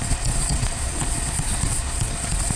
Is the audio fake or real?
fake